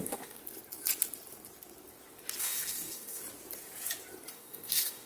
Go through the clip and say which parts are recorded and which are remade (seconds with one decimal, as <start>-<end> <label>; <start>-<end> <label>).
0.0-0.4 remade; 0.4-2.4 recorded; 2.4-3.2 remade; 3.2-4.3 recorded; 4.3-5.1 remade